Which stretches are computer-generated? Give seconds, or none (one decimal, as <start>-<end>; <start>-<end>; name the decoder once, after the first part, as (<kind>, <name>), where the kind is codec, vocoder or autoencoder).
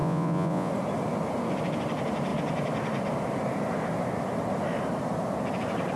0.0-0.7 (vocoder, Vocos)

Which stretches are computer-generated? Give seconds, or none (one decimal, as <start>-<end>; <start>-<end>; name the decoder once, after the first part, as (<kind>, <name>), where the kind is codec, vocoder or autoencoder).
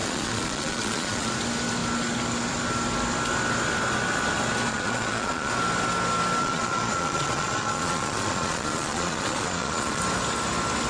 0.0-1.3 (vocoder, Vocos); 4.7-5.5; 6.4-10.0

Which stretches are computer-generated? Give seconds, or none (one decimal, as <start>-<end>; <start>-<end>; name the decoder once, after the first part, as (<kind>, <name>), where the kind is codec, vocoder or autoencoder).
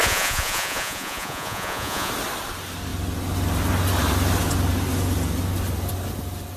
0.0-2.1 (vocoder, Vocos)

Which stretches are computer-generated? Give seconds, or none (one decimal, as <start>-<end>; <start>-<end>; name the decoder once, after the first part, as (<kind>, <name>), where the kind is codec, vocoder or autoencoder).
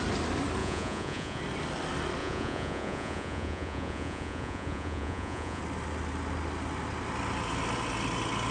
0.6-1.4 (vocoder, Vocos); 2.2-5.6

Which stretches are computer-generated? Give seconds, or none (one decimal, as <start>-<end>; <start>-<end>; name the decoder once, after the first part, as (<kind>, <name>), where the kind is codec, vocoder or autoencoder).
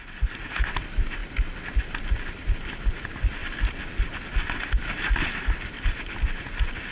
none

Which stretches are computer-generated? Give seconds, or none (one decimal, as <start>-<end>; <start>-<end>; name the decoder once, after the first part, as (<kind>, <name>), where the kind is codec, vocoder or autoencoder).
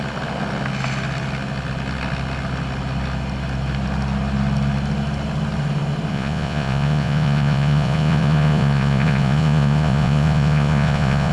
6.1-11.3 (vocoder, Vocos)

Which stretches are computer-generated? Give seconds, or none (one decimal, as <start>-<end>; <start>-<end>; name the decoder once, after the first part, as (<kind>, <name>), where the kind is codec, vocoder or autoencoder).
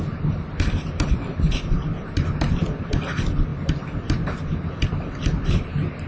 none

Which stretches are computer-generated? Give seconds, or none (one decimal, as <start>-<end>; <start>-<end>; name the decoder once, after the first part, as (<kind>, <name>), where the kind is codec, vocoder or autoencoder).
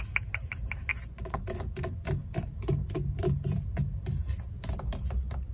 0.9-1.4 (vocoder, Vocos)